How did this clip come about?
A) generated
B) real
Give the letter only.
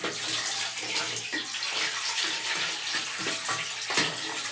B